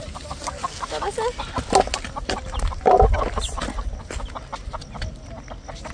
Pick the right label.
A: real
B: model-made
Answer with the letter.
A